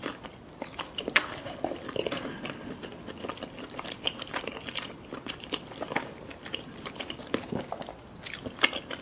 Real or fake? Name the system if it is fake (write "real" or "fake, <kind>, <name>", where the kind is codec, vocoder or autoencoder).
real